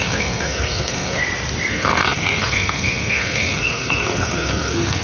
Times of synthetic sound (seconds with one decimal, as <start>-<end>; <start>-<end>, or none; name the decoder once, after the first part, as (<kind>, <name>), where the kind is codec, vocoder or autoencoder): 0.0-1.2 (codec, SNAC); 1.7-5.0